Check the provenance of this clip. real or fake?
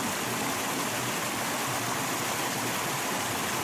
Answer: real